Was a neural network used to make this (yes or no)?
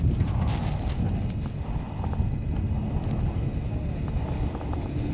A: no